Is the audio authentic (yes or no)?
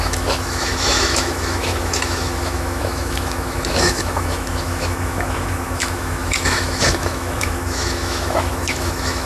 no